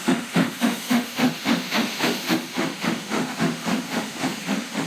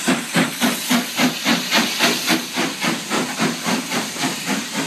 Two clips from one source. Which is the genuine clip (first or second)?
second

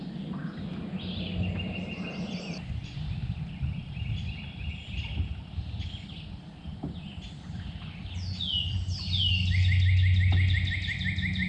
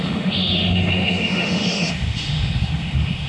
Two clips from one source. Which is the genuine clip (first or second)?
first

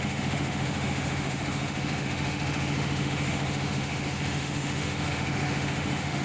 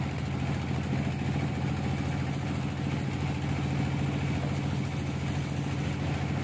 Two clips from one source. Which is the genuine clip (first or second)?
second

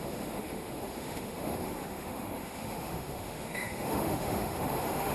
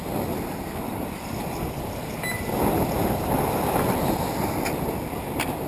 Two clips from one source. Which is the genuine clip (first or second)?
second